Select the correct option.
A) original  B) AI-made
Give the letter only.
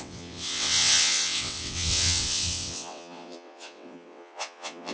B